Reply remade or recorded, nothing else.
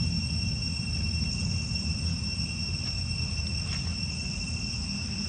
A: recorded